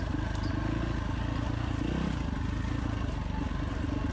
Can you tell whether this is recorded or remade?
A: recorded